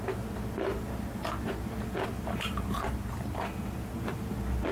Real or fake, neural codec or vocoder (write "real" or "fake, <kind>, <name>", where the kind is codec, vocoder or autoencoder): fake, vocoder, BigVGAN v2